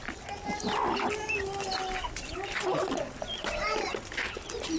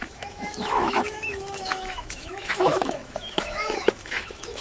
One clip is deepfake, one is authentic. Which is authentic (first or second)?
first